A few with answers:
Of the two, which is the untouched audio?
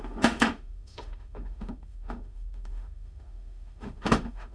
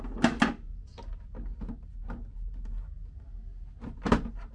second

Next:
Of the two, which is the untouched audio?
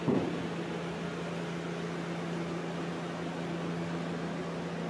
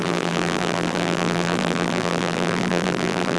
first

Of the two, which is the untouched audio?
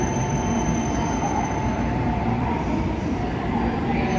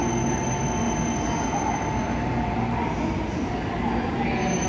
second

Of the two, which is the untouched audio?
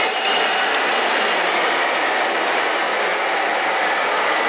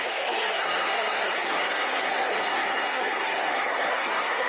first